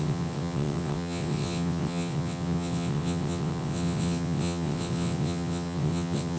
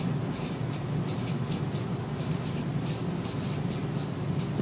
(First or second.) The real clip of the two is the second